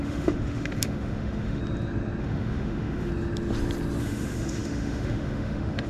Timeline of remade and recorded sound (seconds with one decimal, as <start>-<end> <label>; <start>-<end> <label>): 0.0-1.6 remade; 1.6-2.2 recorded; 2.2-3.1 remade; 3.1-4.0 recorded; 4.0-5.9 remade